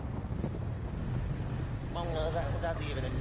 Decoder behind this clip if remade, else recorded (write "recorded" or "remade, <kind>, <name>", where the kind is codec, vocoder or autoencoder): recorded